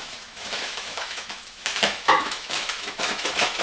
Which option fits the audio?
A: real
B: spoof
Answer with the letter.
B